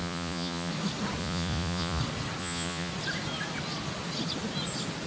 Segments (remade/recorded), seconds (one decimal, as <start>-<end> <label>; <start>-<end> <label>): 0.0-0.7 remade; 0.7-1.2 recorded; 1.2-2.0 remade; 2.0-2.4 recorded; 2.4-2.9 remade; 2.9-5.1 recorded

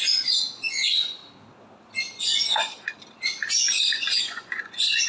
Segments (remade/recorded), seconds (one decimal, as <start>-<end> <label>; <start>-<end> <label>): 0.0-1.2 remade; 1.2-4.2 recorded; 4.2-5.1 remade

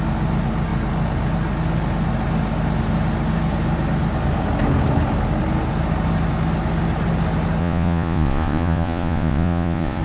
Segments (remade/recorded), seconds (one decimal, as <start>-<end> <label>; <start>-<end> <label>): 0.0-7.6 recorded; 7.6-10.0 remade

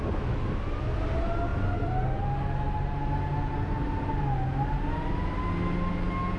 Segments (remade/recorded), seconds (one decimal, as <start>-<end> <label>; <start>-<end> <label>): 0.0-6.4 recorded

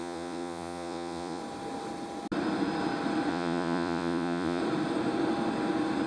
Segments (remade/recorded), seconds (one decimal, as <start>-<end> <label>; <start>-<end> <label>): 0.0-1.4 remade; 1.4-3.3 recorded; 3.3-4.6 remade; 4.6-6.1 recorded

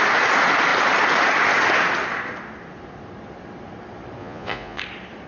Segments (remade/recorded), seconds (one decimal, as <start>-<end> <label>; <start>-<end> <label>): 0.0-4.2 recorded; 4.2-4.8 remade; 4.8-5.3 recorded

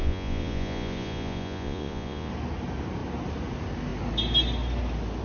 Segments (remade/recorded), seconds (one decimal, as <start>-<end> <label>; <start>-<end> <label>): 0.0-2.3 remade; 2.3-5.2 recorded